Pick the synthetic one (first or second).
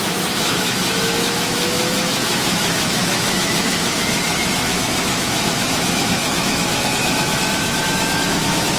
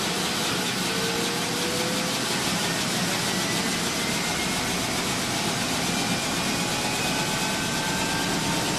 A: first